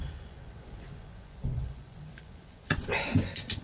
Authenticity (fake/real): fake